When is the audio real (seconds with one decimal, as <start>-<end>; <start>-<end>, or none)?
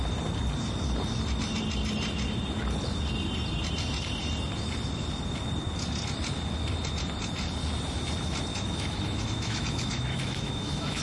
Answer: 0.0-8.5